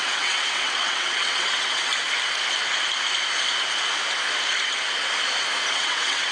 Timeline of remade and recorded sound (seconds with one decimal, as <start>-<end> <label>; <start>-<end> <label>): 0.0-1.9 remade; 1.9-5.7 recorded; 5.7-6.3 remade